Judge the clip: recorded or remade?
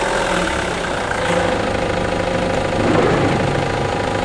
recorded